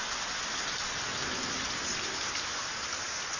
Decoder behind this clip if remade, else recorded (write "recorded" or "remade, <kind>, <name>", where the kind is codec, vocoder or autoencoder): recorded